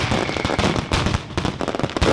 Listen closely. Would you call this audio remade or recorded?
recorded